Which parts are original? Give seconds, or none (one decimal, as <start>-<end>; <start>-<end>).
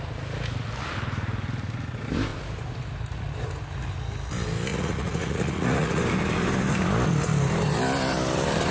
0.0-4.7; 6.0-8.7